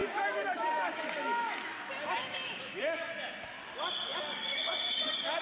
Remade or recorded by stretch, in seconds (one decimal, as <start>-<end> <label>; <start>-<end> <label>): 0.0-1.6 remade; 1.6-2.2 recorded; 2.2-3.1 remade; 3.1-4.1 recorded; 4.1-5.4 remade